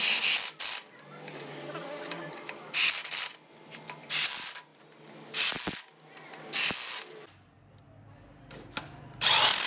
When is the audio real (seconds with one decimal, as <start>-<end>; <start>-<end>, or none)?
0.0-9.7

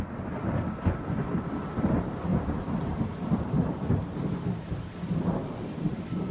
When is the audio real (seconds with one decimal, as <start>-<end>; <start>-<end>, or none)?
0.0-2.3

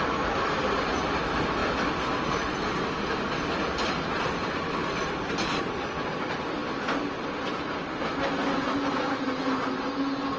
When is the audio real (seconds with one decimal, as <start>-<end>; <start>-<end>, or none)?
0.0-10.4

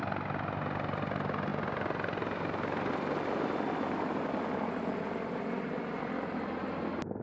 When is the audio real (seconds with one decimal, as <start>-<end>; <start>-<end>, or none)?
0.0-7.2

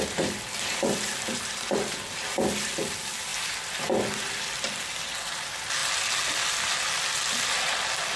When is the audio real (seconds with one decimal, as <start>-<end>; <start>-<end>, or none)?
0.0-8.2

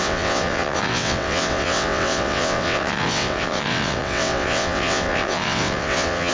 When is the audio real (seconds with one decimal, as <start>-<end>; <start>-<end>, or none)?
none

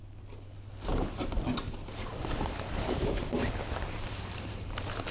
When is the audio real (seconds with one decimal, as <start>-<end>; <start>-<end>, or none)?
0.0-2.1

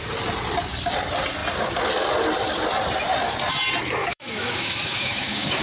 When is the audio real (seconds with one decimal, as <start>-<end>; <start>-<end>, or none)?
0.0-4.0